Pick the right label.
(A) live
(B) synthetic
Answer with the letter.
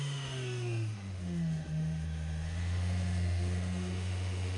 B